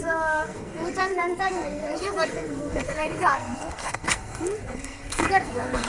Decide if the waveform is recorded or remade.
remade